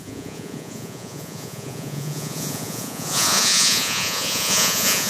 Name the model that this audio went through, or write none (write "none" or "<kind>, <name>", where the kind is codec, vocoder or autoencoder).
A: vocoder, Vocos